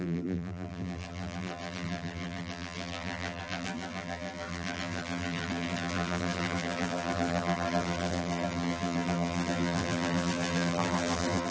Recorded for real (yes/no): no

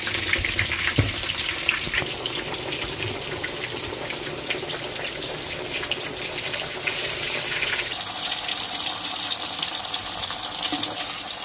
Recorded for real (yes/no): no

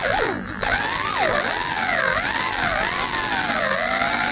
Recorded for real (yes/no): no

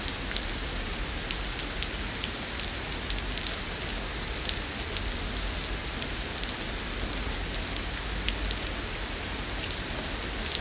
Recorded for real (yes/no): yes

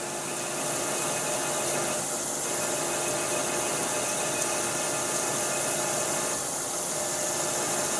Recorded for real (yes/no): no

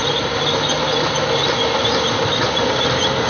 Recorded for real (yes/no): yes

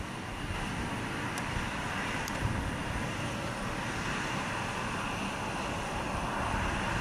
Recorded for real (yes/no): no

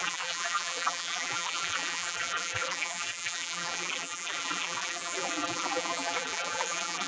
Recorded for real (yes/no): no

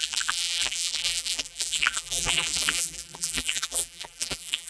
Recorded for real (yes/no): no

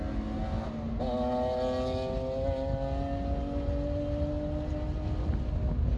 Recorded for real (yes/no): yes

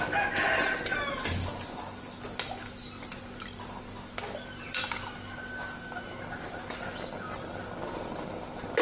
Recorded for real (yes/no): yes